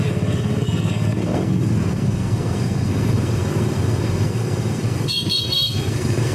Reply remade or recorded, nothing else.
remade